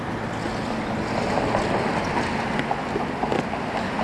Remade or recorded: recorded